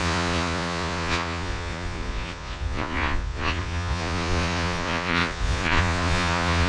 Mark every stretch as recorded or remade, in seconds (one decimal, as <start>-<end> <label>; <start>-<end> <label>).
0.0-6.7 remade